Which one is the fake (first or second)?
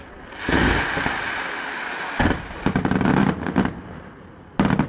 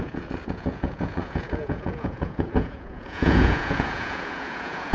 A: second